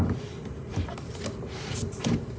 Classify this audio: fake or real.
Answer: real